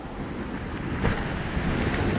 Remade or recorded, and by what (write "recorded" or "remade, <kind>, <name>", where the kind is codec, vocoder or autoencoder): recorded